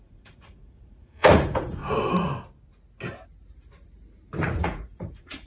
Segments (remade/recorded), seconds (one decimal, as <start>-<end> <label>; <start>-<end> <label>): 0.0-1.8 remade; 1.8-4.6 recorded; 4.6-5.5 remade